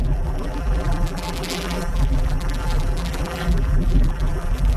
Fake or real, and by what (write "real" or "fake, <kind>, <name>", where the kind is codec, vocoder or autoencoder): fake, vocoder, BigVGAN v2